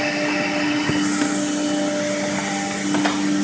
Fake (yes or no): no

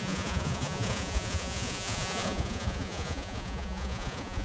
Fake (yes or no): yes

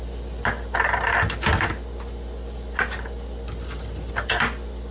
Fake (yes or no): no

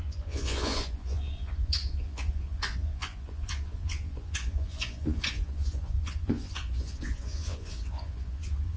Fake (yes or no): yes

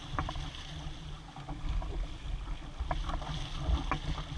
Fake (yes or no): no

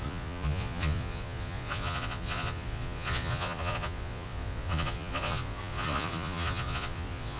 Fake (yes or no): yes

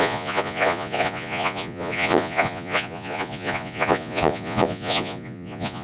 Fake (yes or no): yes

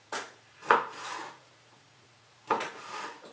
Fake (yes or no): yes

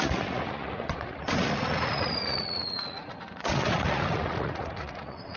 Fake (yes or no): yes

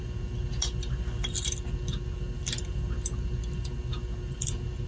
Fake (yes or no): no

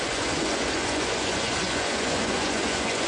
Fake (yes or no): yes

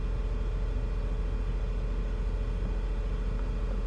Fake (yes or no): no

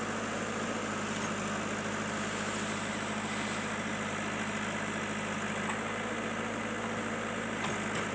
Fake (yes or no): no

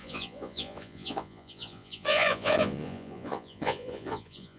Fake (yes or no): yes